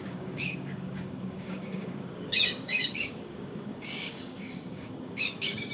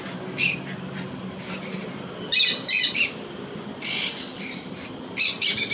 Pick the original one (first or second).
second